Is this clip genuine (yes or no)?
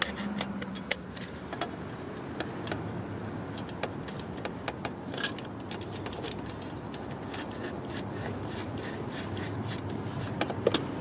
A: yes